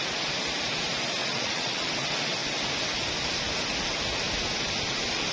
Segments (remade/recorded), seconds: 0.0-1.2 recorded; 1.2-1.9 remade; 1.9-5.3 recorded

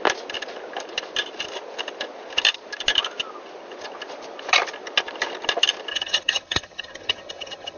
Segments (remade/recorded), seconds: 0.0-5.9 recorded; 5.9-7.8 remade

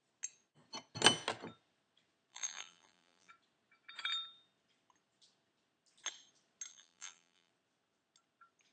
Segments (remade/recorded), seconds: 0.0-2.3 recorded; 2.3-3.3 remade; 3.3-6.7 recorded; 6.7-7.5 remade; 7.5-8.7 recorded

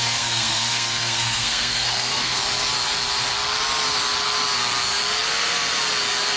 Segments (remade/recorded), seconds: 0.0-2.4 remade; 2.4-6.4 recorded